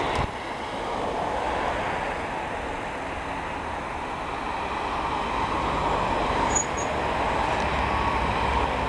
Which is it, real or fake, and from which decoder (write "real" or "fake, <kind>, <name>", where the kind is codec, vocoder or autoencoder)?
real